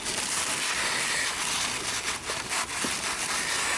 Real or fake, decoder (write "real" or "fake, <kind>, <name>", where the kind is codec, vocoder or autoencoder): real